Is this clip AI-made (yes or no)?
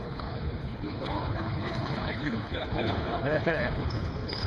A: yes